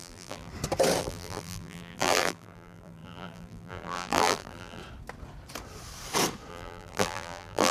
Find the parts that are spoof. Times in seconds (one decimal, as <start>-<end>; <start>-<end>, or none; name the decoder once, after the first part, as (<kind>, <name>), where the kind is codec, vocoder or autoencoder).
0.0-0.5 (vocoder, BigVGAN v2); 1.0-4.8; 6.5-7.7

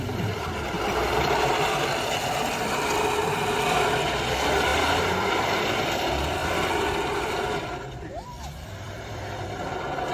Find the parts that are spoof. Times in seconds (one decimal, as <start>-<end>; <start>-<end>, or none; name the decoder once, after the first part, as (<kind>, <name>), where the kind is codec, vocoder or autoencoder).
0.0-6.4 (vocoder, BigVGAN v2); 7.3-10.1

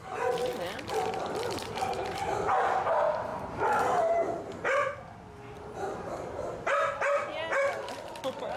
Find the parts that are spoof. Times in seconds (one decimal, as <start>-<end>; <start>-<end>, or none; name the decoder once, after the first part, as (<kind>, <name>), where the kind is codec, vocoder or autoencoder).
0.4-2.5 (vocoder, BigVGAN v2); 3.3-4.0

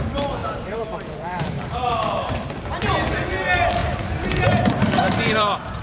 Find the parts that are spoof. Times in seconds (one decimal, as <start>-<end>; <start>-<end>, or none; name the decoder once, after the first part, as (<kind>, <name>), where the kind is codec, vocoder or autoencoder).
0.4-2.5 (vocoder, BigVGAN v2); 3.8-5.8

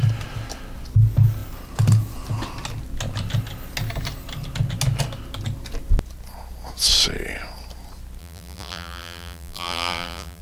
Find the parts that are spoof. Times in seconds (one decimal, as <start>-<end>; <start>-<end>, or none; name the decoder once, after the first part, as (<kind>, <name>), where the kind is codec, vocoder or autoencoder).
8.2-10.4 (vocoder, BigVGAN v2)